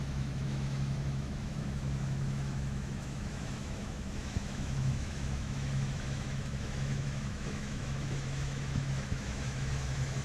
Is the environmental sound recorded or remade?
remade